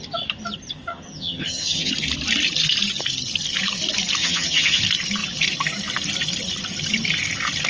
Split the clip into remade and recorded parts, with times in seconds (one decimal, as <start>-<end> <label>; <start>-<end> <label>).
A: 0.0-0.9 recorded; 0.9-1.9 remade; 1.9-4.2 recorded; 4.2-4.8 remade; 4.8-7.7 recorded

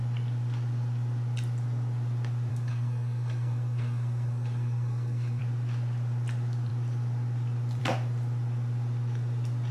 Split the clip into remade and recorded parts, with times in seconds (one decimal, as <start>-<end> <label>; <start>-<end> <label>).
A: 0.0-2.5 recorded; 2.5-5.4 remade; 5.4-9.7 recorded

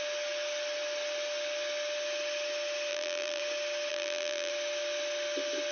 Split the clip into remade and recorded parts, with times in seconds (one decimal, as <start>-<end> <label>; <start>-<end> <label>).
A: 0.0-2.9 recorded; 2.9-3.4 remade; 3.4-3.9 recorded; 3.9-4.5 remade; 4.5-5.7 recorded

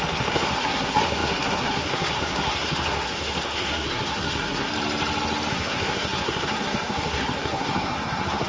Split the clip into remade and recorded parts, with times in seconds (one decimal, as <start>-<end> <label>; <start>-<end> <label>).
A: 0.0-4.7 remade; 4.7-5.5 recorded; 5.5-8.5 remade